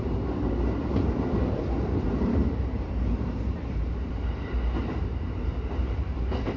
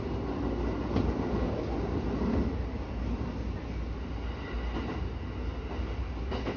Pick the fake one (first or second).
first